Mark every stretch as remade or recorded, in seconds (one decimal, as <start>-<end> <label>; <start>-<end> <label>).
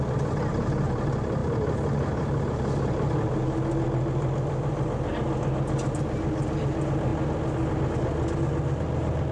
0.0-9.3 recorded